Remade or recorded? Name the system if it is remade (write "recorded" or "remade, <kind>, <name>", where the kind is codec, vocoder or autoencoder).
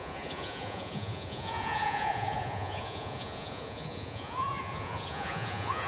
remade, vocoder, Vocos